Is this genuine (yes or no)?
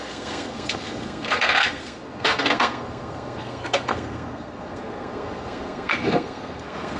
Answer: no